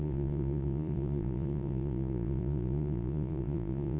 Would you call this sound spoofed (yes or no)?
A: yes